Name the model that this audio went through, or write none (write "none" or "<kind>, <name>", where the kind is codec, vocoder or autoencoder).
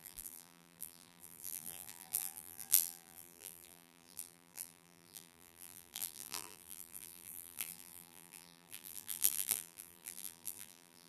vocoder, BigVGAN v2